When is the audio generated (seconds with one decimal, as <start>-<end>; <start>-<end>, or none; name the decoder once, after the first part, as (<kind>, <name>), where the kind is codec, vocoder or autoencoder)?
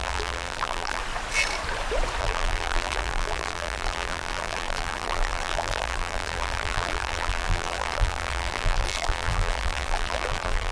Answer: 0.0-1.0 (vocoder, BigVGAN v2); 2.2-10.7